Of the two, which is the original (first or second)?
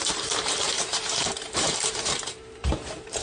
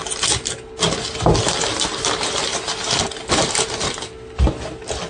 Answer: second